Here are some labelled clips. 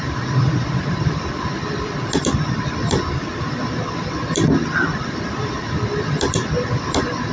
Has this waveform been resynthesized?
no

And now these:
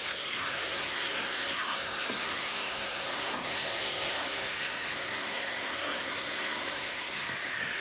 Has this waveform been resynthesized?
yes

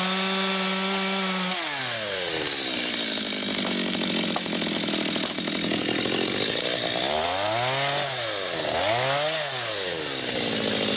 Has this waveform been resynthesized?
no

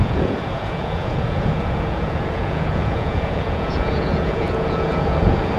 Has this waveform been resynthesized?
yes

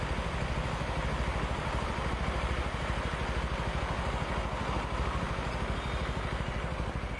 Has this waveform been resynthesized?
no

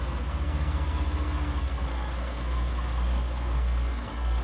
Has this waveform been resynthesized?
yes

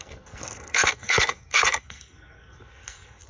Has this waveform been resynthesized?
yes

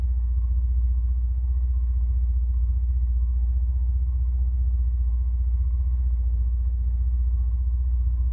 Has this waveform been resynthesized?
yes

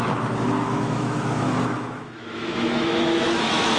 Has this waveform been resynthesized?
yes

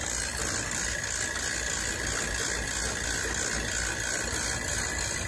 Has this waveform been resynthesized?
no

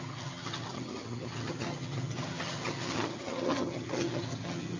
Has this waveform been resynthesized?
yes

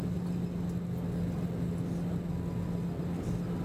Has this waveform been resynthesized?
no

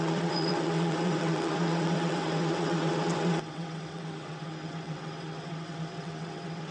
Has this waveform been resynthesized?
yes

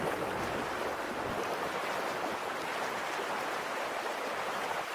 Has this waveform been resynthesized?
no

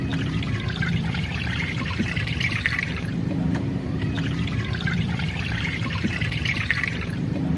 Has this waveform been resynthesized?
yes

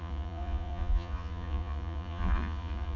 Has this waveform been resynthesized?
yes